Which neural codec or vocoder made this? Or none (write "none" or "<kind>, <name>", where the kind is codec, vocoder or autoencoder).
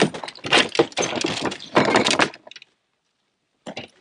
none